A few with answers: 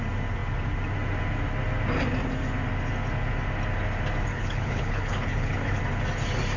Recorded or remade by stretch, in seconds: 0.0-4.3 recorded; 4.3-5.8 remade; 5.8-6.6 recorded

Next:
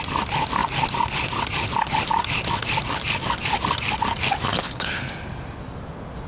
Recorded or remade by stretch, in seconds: 0.0-4.6 recorded; 4.6-5.1 remade; 5.1-6.3 recorded

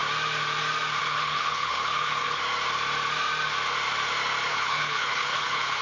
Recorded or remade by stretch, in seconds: 0.0-1.0 recorded; 1.0-2.4 remade; 2.4-4.5 recorded; 4.5-5.8 remade

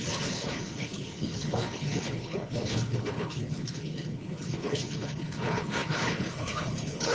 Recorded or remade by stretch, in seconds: 0.0-7.1 remade

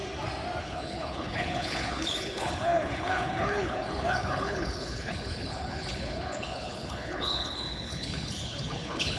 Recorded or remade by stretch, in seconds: 0.0-0.6 recorded; 0.6-9.2 remade

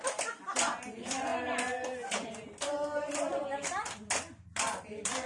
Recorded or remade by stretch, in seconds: 0.0-5.3 recorded

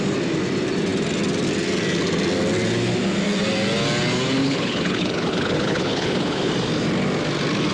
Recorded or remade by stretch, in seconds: 0.0-4.4 recorded; 4.4-6.5 remade; 6.5-7.7 recorded